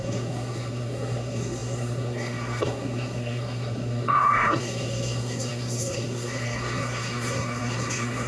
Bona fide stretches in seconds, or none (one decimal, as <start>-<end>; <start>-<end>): none